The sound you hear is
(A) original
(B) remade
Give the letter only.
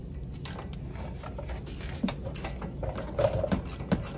A